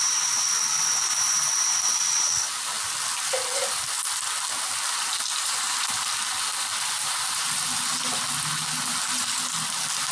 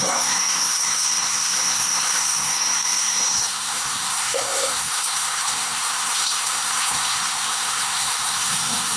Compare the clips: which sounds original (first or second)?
first